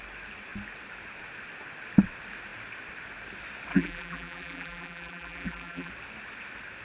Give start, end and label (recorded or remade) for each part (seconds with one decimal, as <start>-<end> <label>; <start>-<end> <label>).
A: 0.0-3.7 recorded; 3.7-5.9 remade; 5.9-6.8 recorded